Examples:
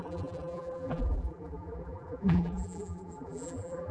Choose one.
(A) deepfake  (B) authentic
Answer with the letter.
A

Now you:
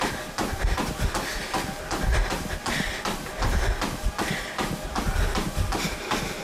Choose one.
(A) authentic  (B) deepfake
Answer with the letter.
A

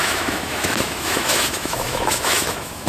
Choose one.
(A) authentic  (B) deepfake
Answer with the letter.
B